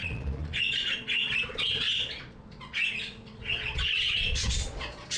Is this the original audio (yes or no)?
no